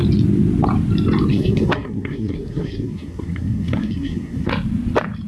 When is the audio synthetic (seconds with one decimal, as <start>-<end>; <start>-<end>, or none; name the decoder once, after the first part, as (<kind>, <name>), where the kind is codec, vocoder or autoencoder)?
1.3-4.5 (codec, SNAC)

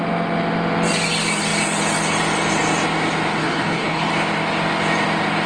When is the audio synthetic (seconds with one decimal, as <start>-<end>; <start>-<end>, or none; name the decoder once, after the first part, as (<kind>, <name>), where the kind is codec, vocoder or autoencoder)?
3.4-4.1 (codec, HILCodec)

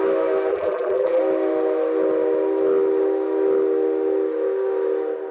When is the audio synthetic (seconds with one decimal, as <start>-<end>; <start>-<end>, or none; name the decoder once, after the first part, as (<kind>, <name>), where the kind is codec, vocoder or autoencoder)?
0.5-1.2 (vocoder, BigVGAN v2)

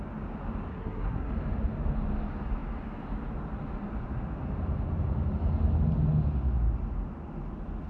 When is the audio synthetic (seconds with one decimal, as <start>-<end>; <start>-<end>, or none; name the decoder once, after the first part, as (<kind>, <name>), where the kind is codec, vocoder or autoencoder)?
0.7-1.3 (codec, SNAC)

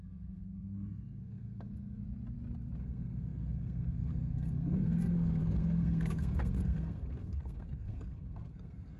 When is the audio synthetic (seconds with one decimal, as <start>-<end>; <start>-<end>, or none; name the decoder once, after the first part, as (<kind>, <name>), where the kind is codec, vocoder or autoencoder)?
0.0-2.0 (codec, SNAC); 2.8-9.0